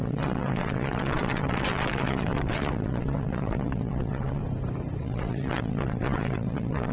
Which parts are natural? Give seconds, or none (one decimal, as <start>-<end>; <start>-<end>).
4.4-5.0